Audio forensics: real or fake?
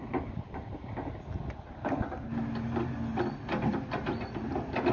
real